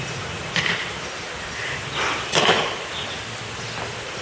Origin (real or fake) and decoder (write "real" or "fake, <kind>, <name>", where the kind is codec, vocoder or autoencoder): real